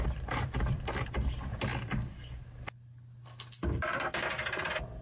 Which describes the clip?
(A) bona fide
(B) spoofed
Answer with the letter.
A